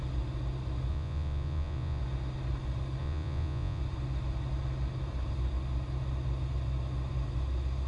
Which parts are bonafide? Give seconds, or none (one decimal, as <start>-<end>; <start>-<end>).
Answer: 0.0-0.9; 2.0-3.0; 3.8-7.9